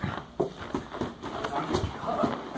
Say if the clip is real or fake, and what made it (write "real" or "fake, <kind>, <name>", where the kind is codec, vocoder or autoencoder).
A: real